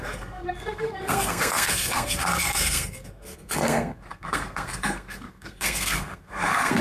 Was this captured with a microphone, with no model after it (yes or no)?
no